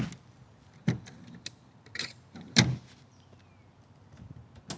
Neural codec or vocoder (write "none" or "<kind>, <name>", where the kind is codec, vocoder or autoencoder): none